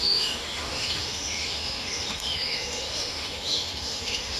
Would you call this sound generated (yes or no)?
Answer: yes